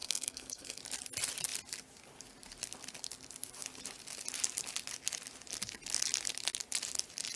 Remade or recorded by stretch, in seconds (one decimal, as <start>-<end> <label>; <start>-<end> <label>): 0.0-0.8 remade; 0.8-7.4 recorded